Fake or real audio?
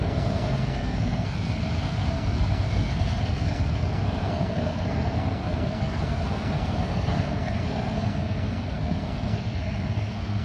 fake